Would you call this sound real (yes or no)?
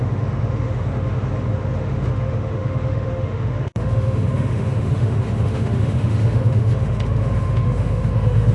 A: no